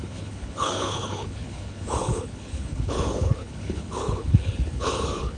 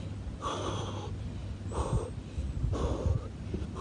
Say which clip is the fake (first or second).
first